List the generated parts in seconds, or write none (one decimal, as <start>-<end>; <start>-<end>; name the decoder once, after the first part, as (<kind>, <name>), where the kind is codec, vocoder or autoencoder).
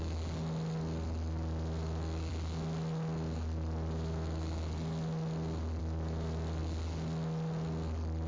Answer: none